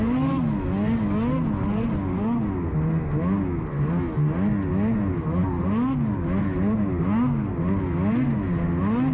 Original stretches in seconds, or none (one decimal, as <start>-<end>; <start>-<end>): 0.0-9.1